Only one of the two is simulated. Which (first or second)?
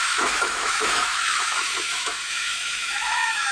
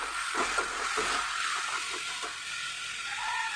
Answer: first